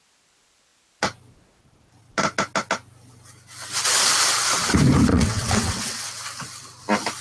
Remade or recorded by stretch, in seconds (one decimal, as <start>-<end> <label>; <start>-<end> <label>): 0.0-5.1 recorded; 5.1-6.2 remade; 6.2-7.2 recorded